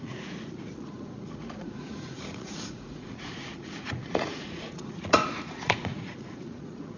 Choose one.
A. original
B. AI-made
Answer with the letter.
B